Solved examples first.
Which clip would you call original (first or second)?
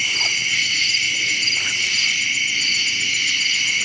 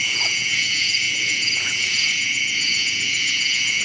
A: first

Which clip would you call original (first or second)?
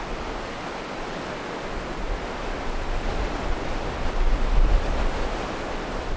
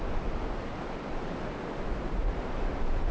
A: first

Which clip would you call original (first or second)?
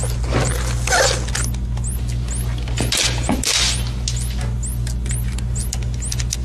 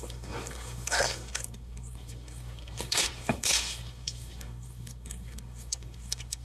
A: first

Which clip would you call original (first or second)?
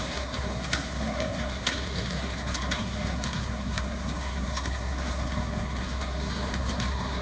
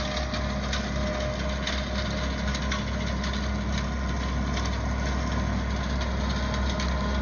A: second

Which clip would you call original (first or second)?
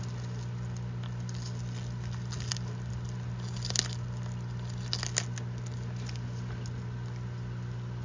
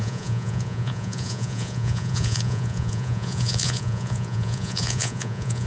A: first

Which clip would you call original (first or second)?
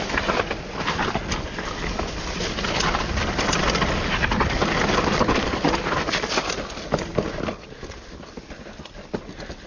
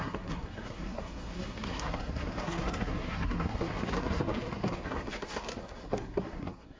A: first